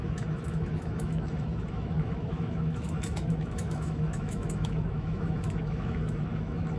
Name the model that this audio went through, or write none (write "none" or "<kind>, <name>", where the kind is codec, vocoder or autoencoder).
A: autoencoder, DAC-VAE